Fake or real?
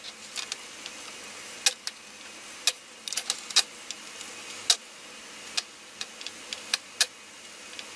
real